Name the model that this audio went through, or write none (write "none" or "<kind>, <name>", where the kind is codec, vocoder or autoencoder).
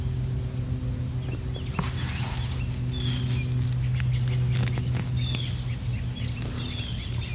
none